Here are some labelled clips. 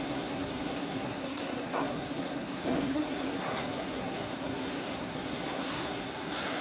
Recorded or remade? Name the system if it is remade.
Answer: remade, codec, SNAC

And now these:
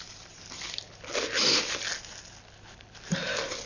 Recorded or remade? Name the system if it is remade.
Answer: recorded